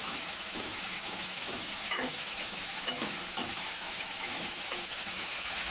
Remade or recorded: remade